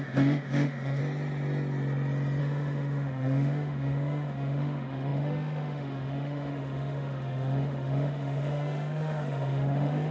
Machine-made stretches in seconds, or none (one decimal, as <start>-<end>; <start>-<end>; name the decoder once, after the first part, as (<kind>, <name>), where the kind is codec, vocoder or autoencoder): 0.0-1.0 (autoencoder, DAC-VAE); 2.4-10.1